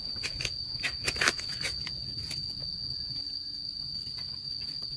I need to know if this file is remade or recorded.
recorded